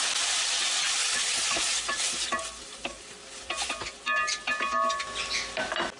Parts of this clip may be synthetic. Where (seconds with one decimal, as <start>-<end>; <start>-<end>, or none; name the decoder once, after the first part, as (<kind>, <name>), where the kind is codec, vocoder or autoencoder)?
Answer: none